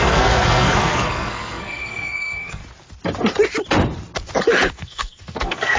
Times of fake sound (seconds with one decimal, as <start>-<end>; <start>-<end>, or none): 0.0-2.6; 4.7-5.8